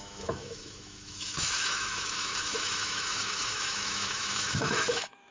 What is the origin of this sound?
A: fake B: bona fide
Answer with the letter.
A